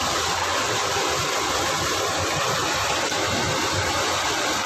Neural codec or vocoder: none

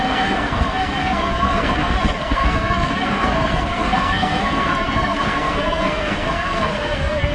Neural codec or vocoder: codec, SNAC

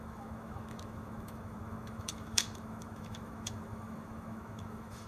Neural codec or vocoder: autoencoder, DAC-VAE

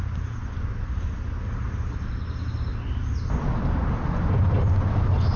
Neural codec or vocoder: none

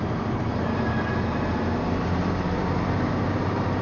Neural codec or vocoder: vocoder, BigVGAN v2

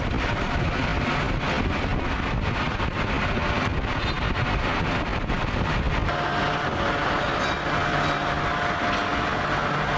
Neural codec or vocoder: none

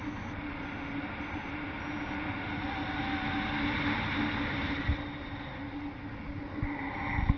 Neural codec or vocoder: none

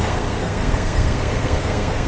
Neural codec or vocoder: codec, SNAC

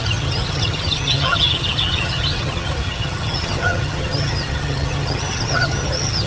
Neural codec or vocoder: vocoder, HiFi-GAN